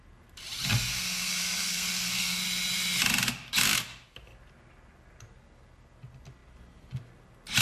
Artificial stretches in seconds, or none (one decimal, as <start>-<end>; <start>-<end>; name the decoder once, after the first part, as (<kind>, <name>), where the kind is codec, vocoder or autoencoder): 0.9-2.4 (codec, SNAC)